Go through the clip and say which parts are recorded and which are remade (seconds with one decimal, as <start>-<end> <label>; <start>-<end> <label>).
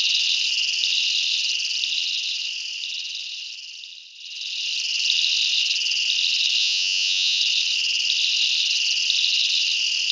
0.0-6.6 recorded; 6.6-7.4 remade; 7.4-10.1 recorded